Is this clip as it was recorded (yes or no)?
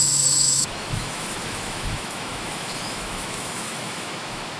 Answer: no